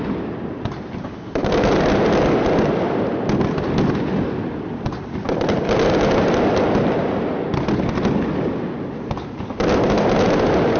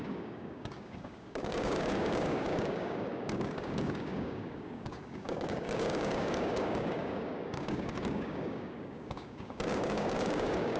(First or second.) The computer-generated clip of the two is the second